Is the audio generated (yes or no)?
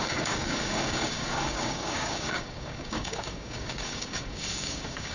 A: yes